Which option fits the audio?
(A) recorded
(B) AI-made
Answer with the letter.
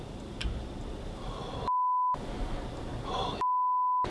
A